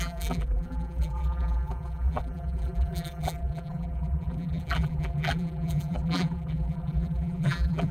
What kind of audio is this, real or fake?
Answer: fake